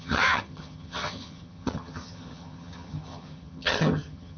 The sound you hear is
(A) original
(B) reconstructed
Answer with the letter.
B